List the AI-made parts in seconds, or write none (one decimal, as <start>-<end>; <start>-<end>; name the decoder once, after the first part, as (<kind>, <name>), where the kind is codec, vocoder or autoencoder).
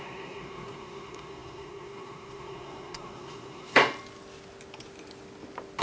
0.0-3.8 (codec, SNAC)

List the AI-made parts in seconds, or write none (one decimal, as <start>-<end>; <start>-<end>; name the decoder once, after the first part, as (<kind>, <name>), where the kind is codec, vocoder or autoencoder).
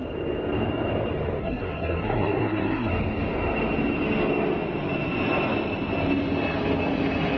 1.4-2.9 (codec, SNAC)